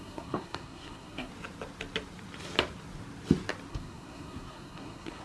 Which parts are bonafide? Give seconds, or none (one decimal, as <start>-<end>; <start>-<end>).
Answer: 1.3-3.7